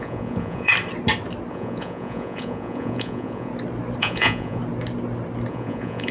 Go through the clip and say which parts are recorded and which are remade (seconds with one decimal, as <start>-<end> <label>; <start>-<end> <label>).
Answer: 0.0-0.7 remade; 0.7-1.5 recorded; 1.5-3.5 remade; 3.5-4.0 recorded; 4.0-4.6 remade; 4.6-5.5 recorded; 5.5-6.1 remade